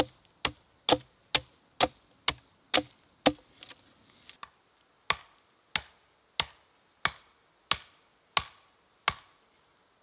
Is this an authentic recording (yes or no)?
yes